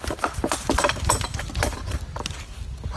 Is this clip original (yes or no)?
yes